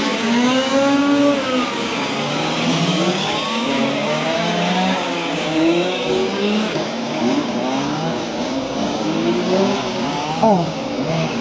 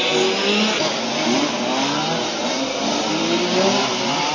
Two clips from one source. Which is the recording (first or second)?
second